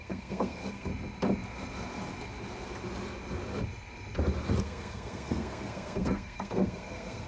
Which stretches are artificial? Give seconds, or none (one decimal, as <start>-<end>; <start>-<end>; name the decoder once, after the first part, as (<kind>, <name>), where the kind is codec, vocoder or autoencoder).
0.0-0.9 (codec, SNAC); 4.6-7.3